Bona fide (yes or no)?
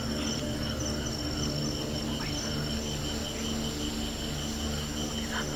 yes